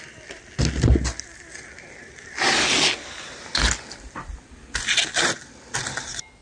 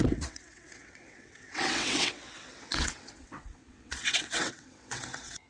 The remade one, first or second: second